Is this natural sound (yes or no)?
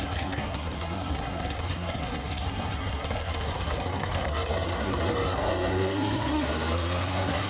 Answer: no